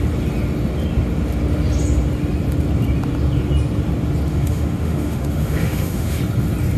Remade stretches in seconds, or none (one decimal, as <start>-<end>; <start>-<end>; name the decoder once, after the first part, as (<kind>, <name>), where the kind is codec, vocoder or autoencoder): 4.3-6.2 (autoencoder, DAC-VAE)